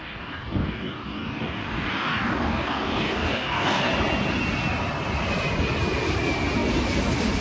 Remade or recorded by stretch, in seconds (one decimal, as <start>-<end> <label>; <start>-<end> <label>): 0.0-3.9 remade; 3.9-7.4 recorded